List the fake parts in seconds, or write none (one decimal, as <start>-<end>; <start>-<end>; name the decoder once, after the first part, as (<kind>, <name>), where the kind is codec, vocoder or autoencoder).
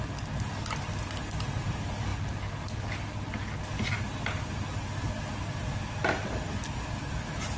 none